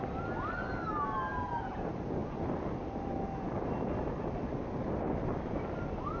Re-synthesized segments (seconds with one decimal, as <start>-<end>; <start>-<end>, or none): none